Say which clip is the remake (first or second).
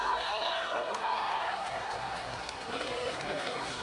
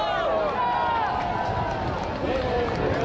first